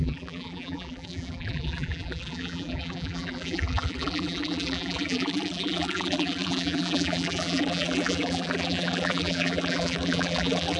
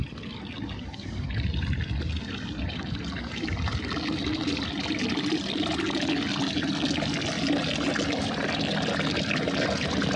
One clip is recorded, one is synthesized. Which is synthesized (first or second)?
first